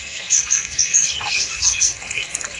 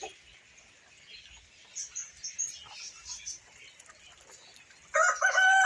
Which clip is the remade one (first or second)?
first